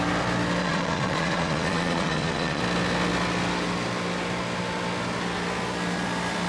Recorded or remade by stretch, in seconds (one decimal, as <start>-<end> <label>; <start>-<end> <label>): 0.0-0.6 recorded; 0.6-2.6 remade; 2.6-6.5 recorded